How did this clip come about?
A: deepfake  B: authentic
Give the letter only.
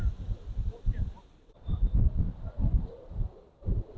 A